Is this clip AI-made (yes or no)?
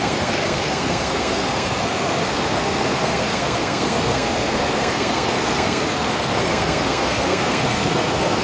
yes